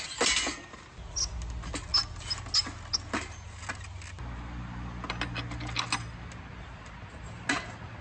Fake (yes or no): no